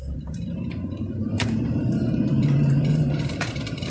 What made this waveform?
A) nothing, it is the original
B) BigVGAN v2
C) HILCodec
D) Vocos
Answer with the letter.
B